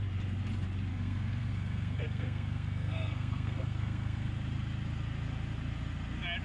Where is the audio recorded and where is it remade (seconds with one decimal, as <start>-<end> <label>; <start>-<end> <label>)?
0.0-0.9 recorded; 0.9-4.3 remade; 4.3-6.4 recorded